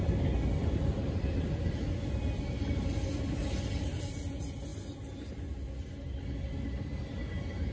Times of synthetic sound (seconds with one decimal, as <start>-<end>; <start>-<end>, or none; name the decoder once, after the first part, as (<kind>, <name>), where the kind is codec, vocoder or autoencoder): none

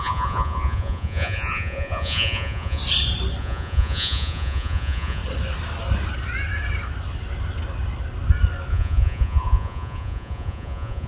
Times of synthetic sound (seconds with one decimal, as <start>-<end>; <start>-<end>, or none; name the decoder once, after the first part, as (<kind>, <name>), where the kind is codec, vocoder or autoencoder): 0.0-2.8 (vocoder, Vocos); 3.4-5.2; 8.7-11.1

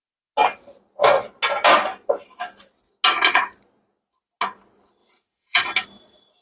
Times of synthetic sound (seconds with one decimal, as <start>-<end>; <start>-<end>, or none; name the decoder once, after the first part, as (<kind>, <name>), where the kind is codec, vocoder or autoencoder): 5.0-5.6 (vocoder, Vocos)